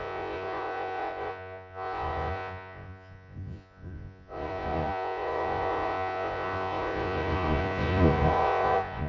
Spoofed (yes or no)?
yes